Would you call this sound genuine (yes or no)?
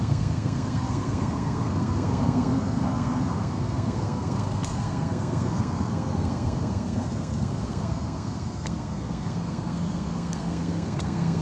no